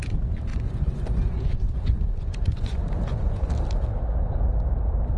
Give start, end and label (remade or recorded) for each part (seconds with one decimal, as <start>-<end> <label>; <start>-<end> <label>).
0.0-0.5 recorded; 0.5-3.5 remade; 3.5-5.2 recorded